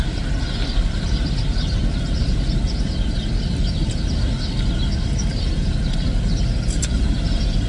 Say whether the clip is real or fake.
real